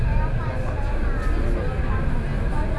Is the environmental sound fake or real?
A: real